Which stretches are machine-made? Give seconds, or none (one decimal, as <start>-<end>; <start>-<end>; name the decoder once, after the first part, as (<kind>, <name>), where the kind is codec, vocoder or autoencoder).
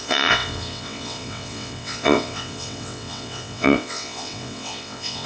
0.0-5.3 (vocoder, WaveNeXt)